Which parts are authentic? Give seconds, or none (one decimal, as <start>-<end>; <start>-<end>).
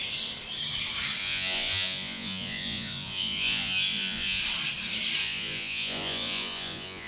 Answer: 0.0-1.2; 4.4-5.2